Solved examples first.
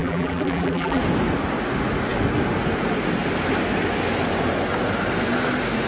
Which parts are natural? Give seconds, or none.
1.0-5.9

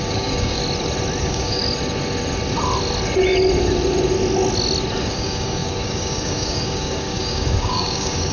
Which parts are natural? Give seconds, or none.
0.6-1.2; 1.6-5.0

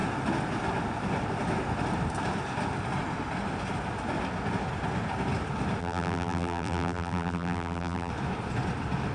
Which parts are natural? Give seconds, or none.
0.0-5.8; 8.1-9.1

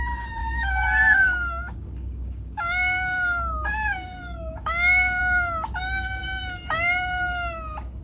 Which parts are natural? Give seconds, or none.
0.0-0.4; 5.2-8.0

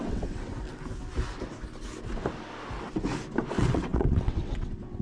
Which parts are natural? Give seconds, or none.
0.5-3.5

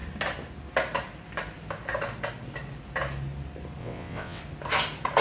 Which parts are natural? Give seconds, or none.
0.0-3.8; 4.4-5.2

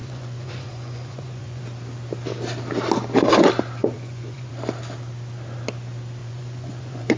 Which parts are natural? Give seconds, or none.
1.6-3.8; 4.5-6.2

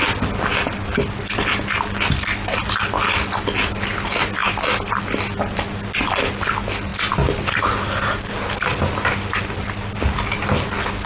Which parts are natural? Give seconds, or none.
0.0-11.1